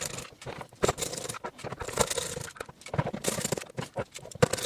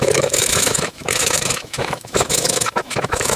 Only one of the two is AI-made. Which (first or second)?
second